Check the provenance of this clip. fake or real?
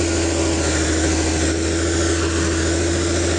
real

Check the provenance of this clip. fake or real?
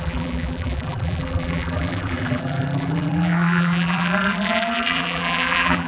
fake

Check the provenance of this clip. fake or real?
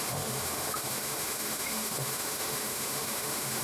fake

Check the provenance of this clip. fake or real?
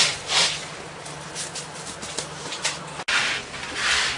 real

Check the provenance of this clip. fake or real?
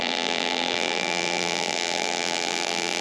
fake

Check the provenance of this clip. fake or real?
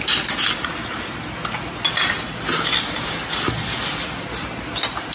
real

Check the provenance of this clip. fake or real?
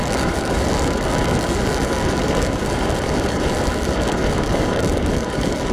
fake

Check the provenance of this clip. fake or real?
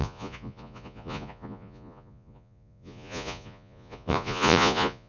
fake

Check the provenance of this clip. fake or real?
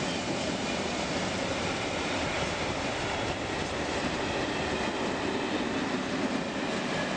real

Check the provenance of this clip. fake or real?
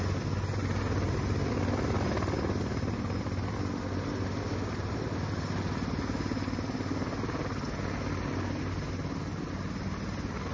real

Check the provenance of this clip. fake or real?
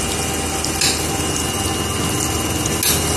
real